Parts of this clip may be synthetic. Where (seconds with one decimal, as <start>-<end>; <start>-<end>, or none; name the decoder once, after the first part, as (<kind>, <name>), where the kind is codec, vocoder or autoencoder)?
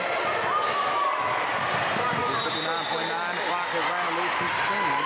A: 0.9-1.5 (codec, DAC)